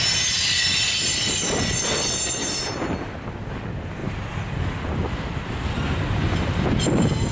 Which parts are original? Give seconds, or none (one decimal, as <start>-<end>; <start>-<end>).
0.0-7.3